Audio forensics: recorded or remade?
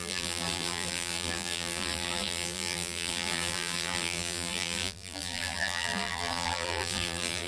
remade